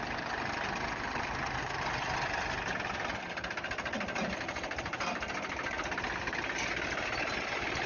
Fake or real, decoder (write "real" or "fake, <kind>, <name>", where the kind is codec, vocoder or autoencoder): real